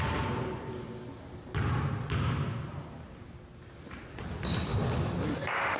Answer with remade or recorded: recorded